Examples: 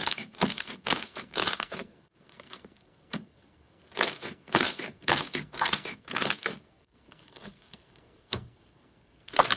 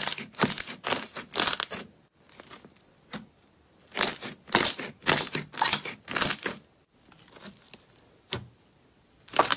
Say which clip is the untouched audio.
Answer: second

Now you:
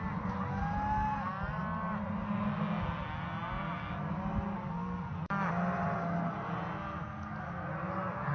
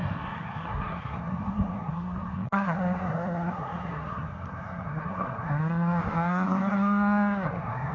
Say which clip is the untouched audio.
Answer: first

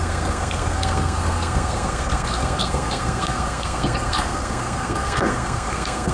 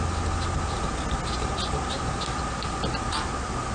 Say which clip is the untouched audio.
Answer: second